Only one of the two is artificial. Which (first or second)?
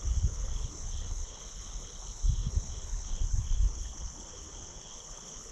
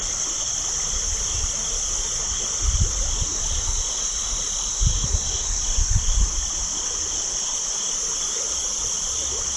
first